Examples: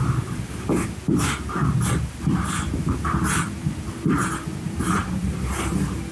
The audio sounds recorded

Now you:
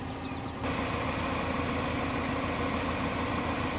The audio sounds recorded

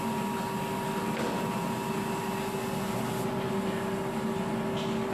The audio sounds recorded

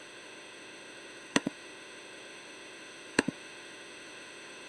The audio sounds remade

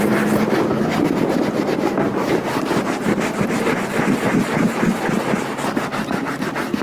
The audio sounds recorded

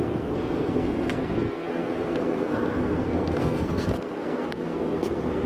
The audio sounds remade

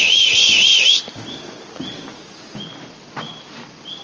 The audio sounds recorded